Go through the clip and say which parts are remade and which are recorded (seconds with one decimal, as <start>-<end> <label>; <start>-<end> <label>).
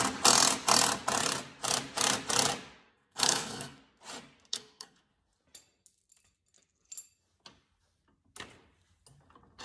0.0-2.9 recorded; 2.9-3.8 remade; 3.8-4.5 recorded; 4.5-5.1 remade; 5.1-9.6 recorded